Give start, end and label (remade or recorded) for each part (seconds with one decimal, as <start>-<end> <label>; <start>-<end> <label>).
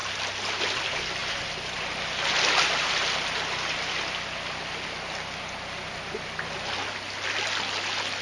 0.0-8.2 recorded